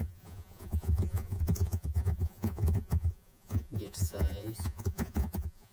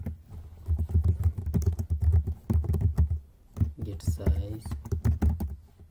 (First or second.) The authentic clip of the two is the second